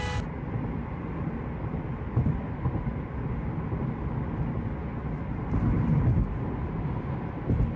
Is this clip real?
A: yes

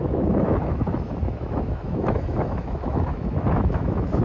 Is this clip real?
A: no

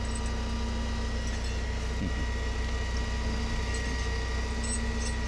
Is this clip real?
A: yes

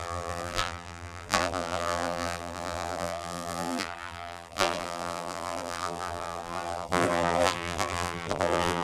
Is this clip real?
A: no